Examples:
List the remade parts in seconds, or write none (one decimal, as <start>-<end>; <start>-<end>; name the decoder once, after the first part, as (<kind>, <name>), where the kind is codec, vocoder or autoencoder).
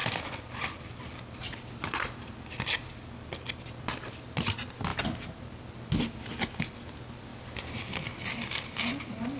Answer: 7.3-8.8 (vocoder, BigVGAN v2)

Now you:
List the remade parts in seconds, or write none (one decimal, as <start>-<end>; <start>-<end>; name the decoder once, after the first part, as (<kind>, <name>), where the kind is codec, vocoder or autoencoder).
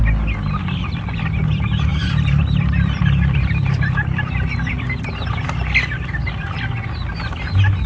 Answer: 1.9-5.5 (vocoder, BigVGAN v2)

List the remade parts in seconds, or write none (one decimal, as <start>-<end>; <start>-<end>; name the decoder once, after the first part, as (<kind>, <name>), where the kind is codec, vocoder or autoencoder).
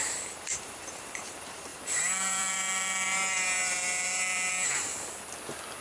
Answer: 0.0-4.9 (vocoder, BigVGAN v2)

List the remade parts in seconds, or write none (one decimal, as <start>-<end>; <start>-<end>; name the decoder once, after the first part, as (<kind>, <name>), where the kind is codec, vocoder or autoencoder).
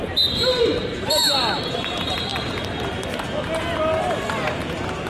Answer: 0.0-2.3 (vocoder, BigVGAN v2); 4.1-4.6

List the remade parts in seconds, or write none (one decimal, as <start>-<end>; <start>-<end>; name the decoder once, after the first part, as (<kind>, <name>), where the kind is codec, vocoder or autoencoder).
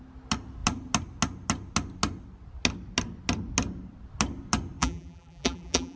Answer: 4.8-6.0 (vocoder, BigVGAN v2)